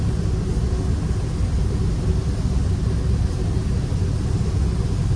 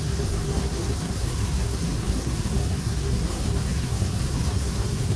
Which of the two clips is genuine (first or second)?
first